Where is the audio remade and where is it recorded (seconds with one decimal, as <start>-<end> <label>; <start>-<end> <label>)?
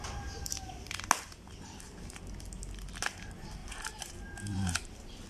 0.0-3.6 recorded; 3.6-4.1 remade; 4.1-5.3 recorded